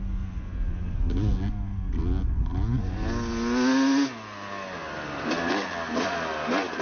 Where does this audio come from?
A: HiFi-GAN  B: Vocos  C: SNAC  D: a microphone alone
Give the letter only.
D